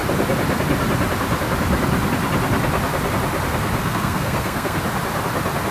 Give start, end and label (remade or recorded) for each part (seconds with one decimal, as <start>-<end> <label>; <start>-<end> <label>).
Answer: 0.0-3.8 recorded; 3.8-4.8 remade; 4.8-5.7 recorded